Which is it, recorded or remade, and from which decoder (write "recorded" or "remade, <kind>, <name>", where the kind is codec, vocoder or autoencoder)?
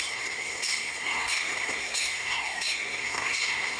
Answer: remade, codec, SNAC